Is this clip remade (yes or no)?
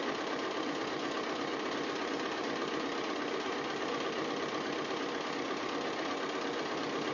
no